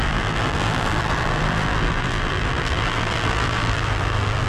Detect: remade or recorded remade